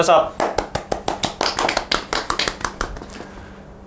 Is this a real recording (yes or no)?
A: yes